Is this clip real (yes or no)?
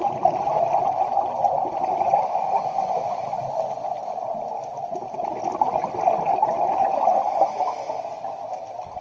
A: yes